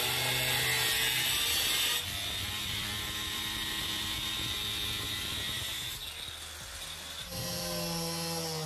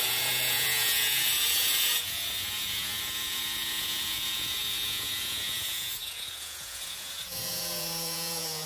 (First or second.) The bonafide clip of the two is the first